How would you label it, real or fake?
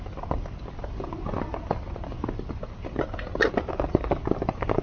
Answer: fake